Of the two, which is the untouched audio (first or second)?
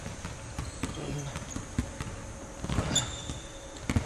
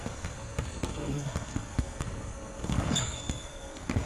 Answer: first